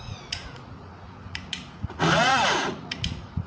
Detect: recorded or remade remade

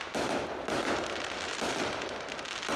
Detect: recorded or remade recorded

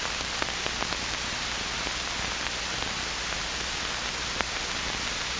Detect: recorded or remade recorded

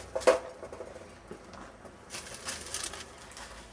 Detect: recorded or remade recorded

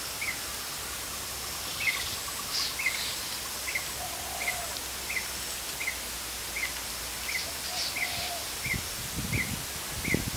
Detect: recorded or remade recorded